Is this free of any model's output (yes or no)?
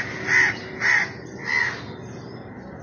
yes